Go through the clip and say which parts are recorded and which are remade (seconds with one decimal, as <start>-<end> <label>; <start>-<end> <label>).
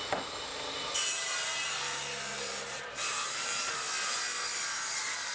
0.0-0.5 recorded; 0.5-3.7 remade; 3.7-5.3 recorded